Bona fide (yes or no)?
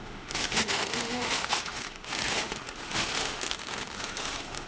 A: no